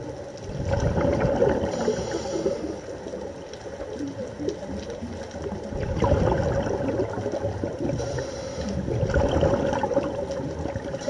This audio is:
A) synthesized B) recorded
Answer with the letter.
B